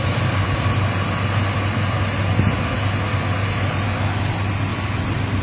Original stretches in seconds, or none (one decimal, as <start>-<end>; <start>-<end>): 0.0-5.4